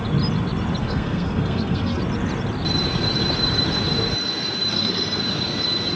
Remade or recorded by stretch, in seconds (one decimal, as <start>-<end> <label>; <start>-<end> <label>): 0.0-0.8 recorded; 0.8-2.0 remade; 2.0-4.7 recorded; 4.7-5.2 remade; 5.2-6.0 recorded